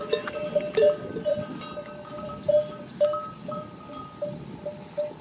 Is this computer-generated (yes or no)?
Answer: no